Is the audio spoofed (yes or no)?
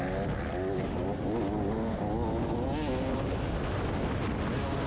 no